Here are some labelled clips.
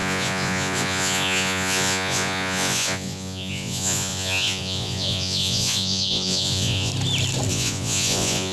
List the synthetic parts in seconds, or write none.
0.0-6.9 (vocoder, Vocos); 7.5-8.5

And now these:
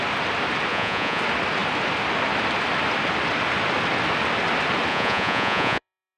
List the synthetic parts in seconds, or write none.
0.7-1.2 (vocoder, Vocos); 4.9-6.2

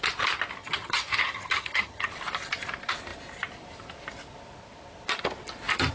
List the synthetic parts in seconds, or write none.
0.6-2.1 (vocoder, HiFi-GAN)

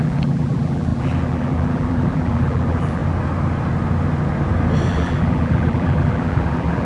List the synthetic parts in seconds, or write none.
0.0-3.0 (vocoder, BigVGAN v2); 4.9-6.8

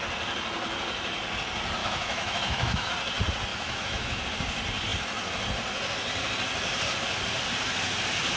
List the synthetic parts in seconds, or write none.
1.8-2.9 (autoencoder, DAC-VAE); 3.5-4.2

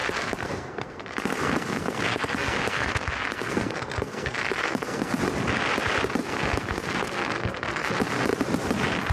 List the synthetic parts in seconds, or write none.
0.0-5.2 (codec, SNAC); 6.2-7.9

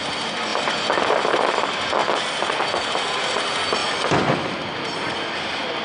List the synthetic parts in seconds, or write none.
2.0-2.5 (vocoder, BigVGAN v2); 3.8-4.3

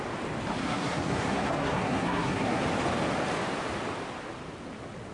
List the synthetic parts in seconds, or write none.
0.6-2.6 (codec, SNAC)